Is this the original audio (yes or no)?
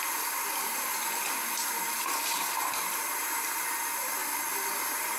yes